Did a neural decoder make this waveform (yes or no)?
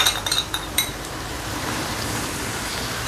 yes